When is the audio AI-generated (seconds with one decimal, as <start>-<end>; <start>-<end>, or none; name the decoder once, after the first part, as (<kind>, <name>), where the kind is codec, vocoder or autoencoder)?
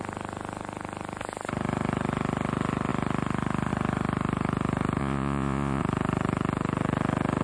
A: 5.0-5.8 (vocoder, Vocos)